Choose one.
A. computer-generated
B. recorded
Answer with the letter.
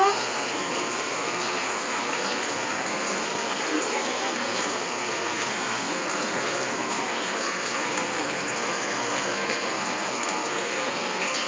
A